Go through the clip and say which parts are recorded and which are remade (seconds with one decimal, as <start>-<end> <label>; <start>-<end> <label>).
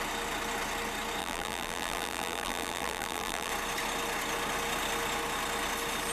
0.0-1.2 recorded; 1.2-3.5 remade; 3.5-6.1 recorded